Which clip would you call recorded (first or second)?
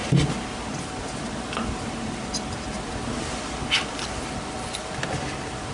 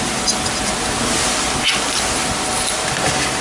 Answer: second